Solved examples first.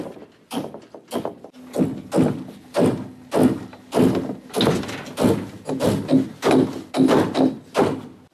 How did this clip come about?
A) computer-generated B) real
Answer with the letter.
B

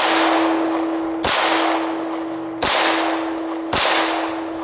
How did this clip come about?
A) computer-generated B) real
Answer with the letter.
B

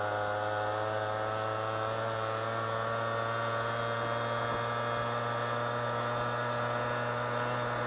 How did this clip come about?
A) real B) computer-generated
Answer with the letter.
A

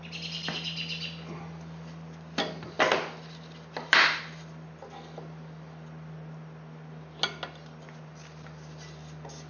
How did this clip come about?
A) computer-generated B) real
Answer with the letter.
B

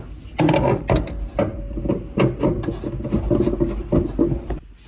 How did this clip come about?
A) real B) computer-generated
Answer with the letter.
A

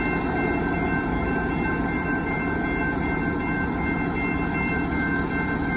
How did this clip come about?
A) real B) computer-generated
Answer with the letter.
A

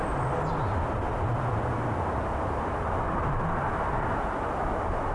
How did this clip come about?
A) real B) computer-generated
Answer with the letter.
A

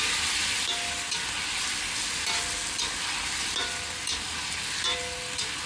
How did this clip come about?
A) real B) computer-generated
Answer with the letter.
A